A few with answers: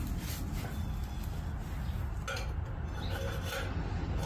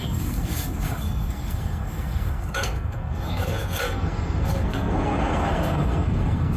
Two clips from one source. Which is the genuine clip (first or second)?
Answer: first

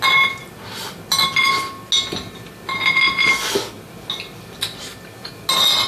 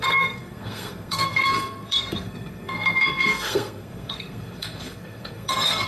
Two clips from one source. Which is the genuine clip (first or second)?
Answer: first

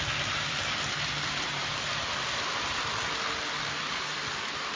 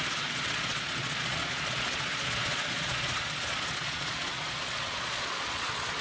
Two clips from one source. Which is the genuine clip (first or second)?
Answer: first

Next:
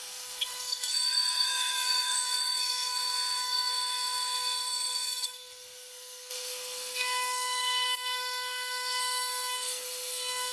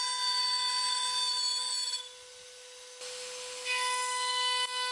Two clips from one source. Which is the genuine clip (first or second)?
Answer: second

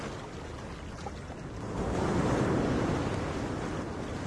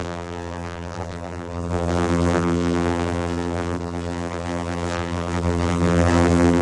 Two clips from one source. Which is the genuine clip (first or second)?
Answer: first